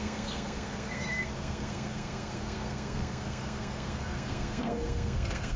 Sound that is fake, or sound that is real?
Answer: fake